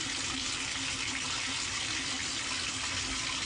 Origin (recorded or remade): recorded